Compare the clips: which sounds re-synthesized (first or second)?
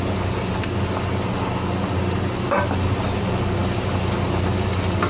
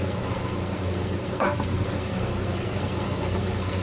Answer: second